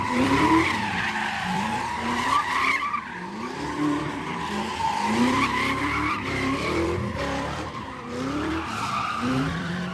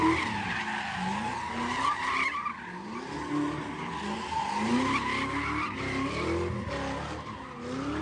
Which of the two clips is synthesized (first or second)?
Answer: first